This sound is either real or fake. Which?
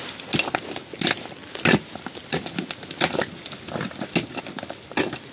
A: real